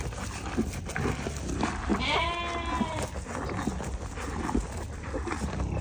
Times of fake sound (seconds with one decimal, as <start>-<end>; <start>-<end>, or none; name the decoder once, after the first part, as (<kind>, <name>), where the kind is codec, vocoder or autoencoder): none